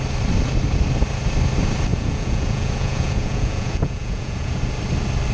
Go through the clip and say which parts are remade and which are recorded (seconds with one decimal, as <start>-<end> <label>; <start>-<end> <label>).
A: 0.0-1.9 recorded; 1.9-4.6 remade; 4.6-5.3 recorded